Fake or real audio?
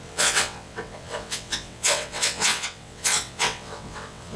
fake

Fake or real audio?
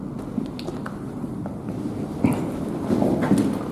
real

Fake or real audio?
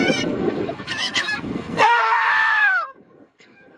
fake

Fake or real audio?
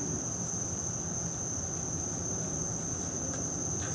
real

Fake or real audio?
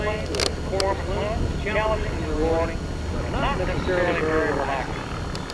real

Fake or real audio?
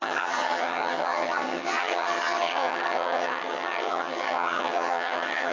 fake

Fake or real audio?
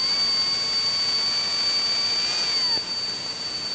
real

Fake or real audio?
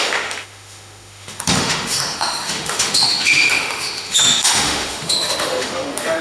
fake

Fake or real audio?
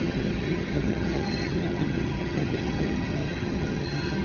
fake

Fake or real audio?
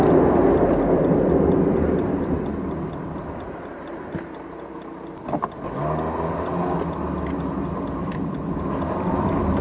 real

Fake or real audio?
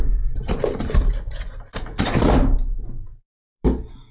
fake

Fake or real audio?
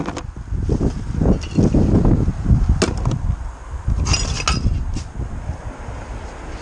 real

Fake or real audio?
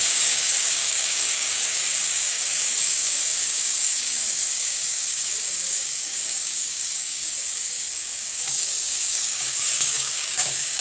fake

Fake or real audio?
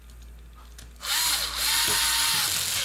real